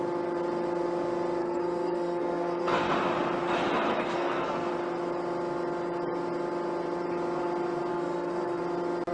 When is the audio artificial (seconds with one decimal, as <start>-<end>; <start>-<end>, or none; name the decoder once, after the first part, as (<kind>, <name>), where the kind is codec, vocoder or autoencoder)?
1.4-2.9 (codec, SNAC); 3.9-4.7; 7.9-8.6